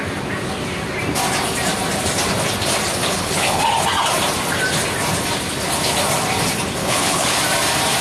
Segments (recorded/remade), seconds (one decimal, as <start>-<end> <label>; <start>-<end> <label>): 0.0-3.0 recorded; 3.0-3.6 remade; 3.6-6.8 recorded; 6.8-7.4 remade; 7.4-8.0 recorded